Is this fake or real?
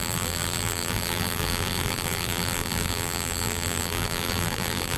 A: fake